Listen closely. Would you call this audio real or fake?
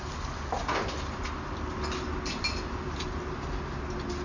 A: real